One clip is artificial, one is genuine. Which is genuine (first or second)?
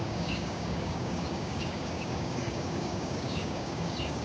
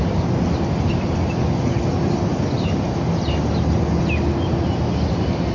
second